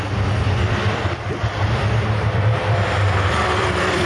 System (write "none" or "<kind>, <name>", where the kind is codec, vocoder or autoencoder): vocoder, BigVGAN v2